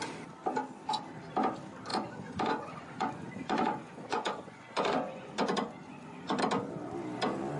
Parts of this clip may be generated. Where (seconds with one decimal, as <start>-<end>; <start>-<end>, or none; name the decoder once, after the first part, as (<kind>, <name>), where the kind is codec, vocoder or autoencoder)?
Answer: 1.9-6.4 (vocoder, Vocos)